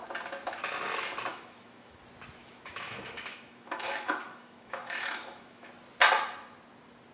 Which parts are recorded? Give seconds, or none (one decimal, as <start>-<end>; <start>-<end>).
0.0-1.3; 2.0-2.4; 5.7-7.1